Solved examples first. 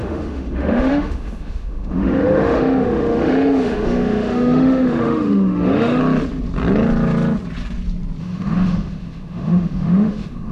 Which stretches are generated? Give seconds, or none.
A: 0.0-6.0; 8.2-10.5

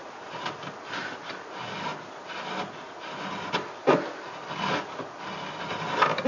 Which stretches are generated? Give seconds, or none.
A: none

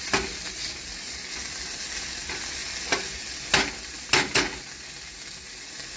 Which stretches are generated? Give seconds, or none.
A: none

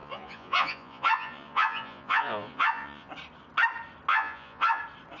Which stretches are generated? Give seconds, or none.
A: 0.0-3.1; 4.1-4.8

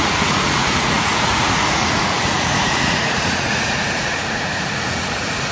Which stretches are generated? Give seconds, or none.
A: 0.0-5.5